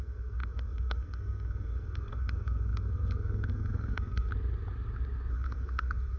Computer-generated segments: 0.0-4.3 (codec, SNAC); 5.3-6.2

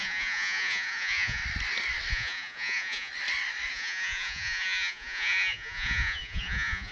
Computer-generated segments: 0.0-1.4 (vocoder, Vocos); 2.1-3.1; 3.7-6.9

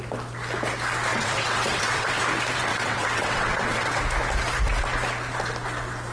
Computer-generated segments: 1.1-2.2 (vocoder, WaveNeXt); 2.7-4.0

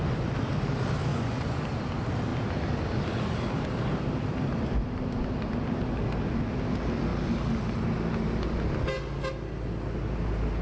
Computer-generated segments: 1.1-1.6 (vocoder, Vocos)